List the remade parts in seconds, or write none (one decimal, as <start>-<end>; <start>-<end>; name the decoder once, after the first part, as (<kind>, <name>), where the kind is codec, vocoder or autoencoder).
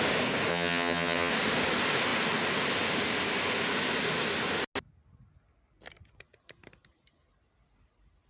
0.5-1.3 (vocoder, HiFi-GAN)